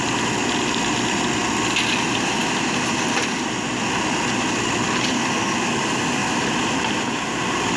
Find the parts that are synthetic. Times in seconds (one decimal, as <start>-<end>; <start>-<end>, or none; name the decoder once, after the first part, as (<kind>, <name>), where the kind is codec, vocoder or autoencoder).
none